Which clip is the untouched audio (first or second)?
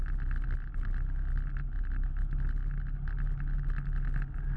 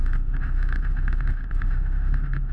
first